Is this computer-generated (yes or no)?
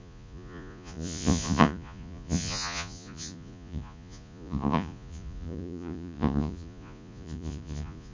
yes